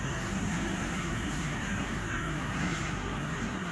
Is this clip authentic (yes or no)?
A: no